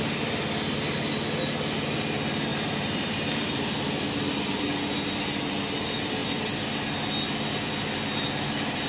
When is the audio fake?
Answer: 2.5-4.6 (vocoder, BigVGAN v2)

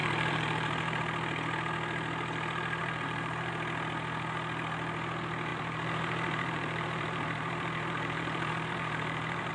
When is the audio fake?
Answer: 0.0-1.0 (vocoder, BigVGAN v2); 2.8-3.5; 5.5-9.5